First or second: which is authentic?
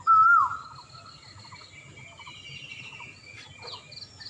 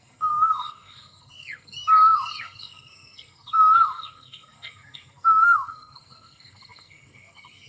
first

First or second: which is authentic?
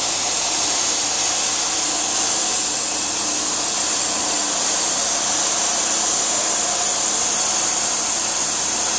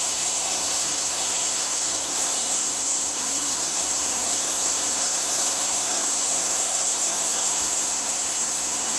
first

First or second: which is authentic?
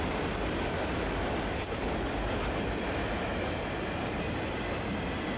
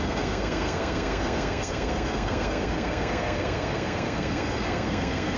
first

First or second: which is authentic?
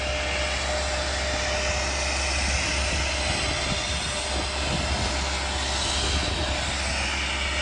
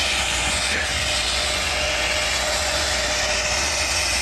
first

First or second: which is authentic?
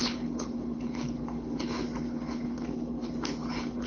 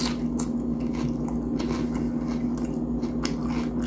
second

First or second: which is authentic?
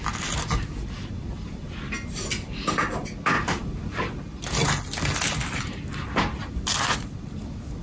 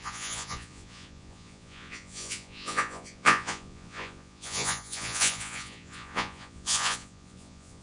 first